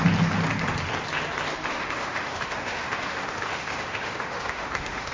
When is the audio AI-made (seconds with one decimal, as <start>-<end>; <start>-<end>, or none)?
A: 1.7-5.1